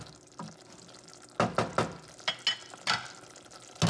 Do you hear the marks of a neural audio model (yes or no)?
no